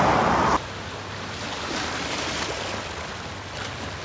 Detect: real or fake real